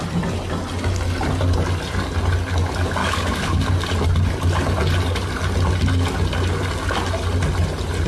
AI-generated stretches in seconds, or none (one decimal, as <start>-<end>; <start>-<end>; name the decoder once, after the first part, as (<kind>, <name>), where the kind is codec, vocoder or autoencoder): 3.0-3.7 (codec, DAC)